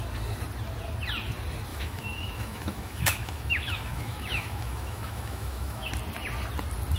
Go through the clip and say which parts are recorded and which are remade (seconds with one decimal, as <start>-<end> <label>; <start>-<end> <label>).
0.0-1.7 recorded; 1.7-5.9 remade; 5.9-7.0 recorded